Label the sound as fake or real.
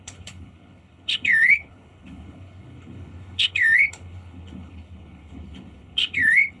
fake